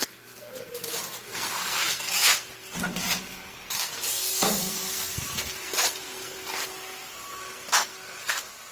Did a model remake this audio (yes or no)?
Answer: yes